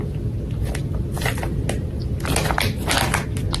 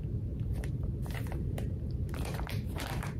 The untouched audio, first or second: first